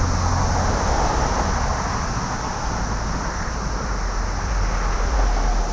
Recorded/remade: recorded